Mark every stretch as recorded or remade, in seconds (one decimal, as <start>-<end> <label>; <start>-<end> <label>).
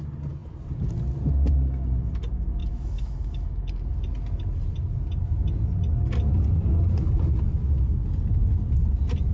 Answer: 0.0-2.6 recorded; 2.6-3.6 remade; 3.6-9.3 recorded